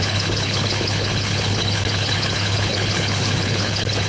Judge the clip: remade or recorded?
remade